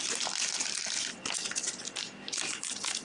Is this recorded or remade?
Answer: recorded